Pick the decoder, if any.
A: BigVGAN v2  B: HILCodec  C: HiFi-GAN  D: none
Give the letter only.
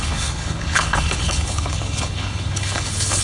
B